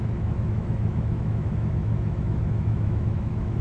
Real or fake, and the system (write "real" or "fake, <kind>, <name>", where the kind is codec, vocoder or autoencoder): fake, autoencoder, DAC-VAE